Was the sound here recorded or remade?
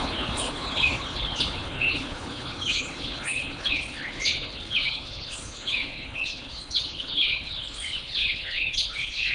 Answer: remade